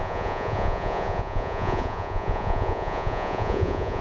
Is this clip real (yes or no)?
no